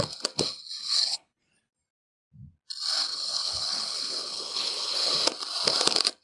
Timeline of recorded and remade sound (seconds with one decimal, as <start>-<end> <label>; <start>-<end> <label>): 0.0-0.8 recorded; 0.8-1.7 remade; 1.7-3.1 recorded; 3.1-5.1 remade; 5.1-6.2 recorded